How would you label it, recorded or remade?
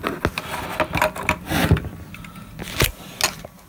recorded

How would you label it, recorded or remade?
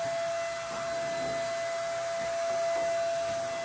recorded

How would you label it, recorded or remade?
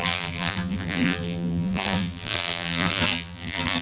remade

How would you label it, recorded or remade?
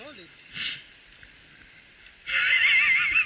recorded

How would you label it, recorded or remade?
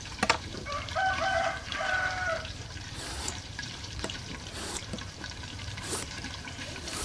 remade